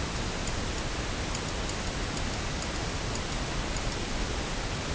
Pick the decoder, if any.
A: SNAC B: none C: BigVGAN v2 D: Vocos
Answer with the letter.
B